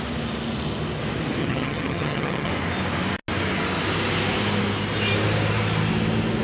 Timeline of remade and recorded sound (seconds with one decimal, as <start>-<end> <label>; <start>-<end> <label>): 0.0-1.4 recorded; 1.4-2.5 remade; 2.5-6.4 recorded